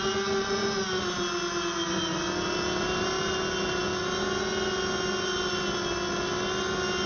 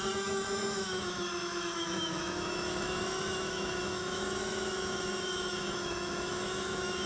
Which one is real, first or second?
first